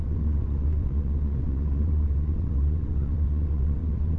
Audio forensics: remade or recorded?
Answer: remade